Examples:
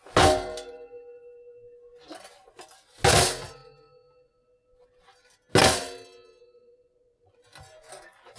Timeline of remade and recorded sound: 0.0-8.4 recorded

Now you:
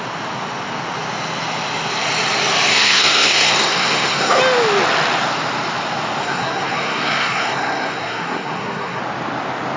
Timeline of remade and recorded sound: 0.0-2.7 recorded; 2.7-4.4 remade; 4.4-6.2 recorded; 6.2-9.0 remade; 9.0-9.8 recorded